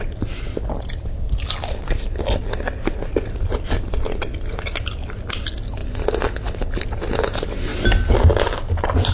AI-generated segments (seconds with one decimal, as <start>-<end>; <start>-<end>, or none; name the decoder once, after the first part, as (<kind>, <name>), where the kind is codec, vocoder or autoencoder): none